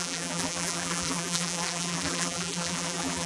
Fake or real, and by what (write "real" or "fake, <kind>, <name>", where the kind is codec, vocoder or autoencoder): fake, vocoder, BigVGAN v2